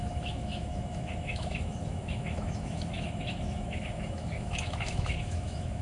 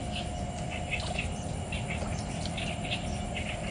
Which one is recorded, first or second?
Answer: second